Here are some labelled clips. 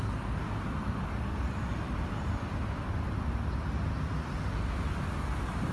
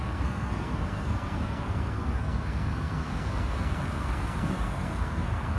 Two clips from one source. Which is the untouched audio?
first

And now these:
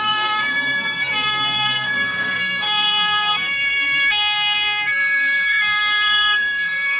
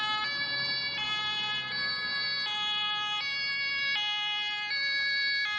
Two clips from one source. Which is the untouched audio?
second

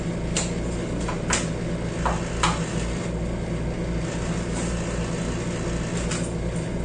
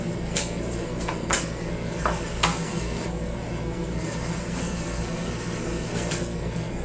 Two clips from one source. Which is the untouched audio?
first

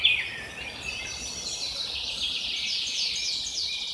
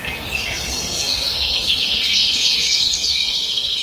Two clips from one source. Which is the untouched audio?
first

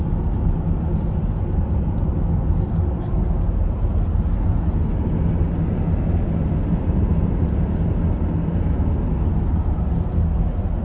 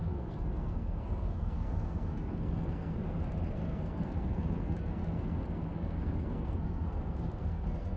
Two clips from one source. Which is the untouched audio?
first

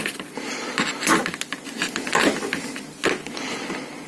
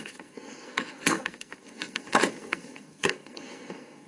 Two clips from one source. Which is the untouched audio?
first